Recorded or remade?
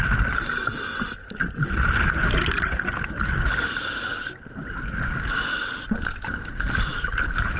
recorded